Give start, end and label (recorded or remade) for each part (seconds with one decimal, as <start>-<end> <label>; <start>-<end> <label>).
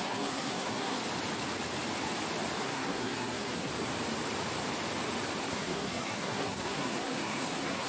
0.0-1.0 remade; 1.0-2.6 recorded; 2.6-3.7 remade; 3.7-5.4 recorded; 5.4-7.9 remade